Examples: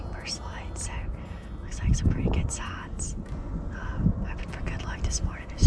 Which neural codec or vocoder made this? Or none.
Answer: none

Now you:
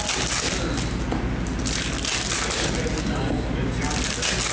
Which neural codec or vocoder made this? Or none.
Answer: none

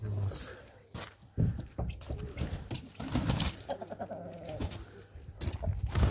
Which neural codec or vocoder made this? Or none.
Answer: none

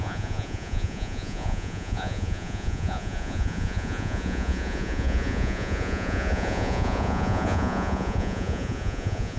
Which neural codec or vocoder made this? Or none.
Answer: vocoder, Vocos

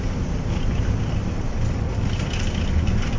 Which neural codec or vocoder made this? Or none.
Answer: none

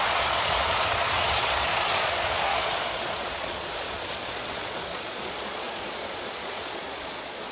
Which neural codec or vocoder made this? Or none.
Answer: vocoder, Vocos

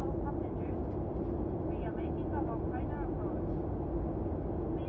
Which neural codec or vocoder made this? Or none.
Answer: none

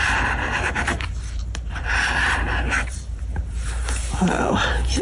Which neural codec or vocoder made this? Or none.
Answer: vocoder, BigVGAN v2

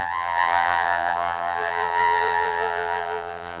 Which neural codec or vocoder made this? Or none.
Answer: vocoder, BigVGAN v2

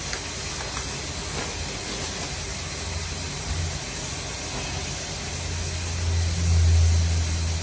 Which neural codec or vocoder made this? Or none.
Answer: none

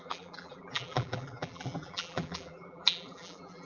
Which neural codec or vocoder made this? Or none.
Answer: vocoder, BigVGAN v2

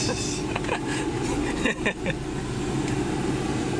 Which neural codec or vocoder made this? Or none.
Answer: none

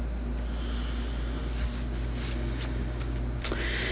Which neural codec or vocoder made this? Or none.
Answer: none